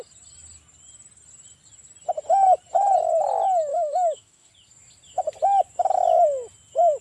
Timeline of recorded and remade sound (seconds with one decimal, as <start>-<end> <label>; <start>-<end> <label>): 0.0-3.7 recorded; 3.7-4.5 remade; 4.5-7.0 recorded